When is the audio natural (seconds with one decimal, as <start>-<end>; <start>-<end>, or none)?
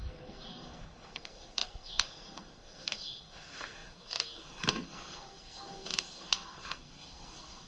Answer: none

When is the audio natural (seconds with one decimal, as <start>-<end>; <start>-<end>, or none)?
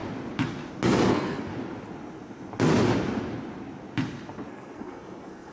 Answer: 0.0-1.1; 1.5-4.5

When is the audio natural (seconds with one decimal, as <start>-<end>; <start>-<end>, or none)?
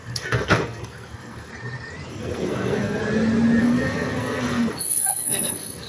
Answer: 1.5-2.1; 3.0-3.6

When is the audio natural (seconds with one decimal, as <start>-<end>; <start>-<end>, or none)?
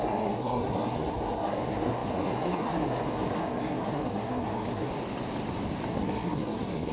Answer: 4.9-5.9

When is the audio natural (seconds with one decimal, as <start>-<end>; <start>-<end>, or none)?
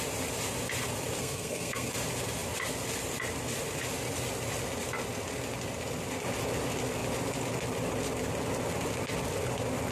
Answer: 0.0-1.2; 1.9-9.9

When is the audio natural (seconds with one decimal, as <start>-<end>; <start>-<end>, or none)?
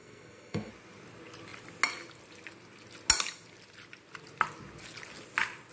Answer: 0.7-5.7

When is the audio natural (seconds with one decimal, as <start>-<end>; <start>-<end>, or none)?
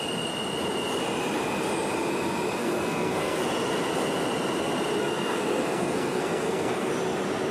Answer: 0.0-2.6; 3.4-5.0; 6.9-7.5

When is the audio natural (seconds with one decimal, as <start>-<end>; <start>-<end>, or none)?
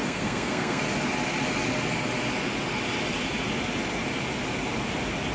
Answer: 0.8-5.3